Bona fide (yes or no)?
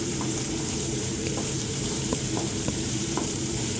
no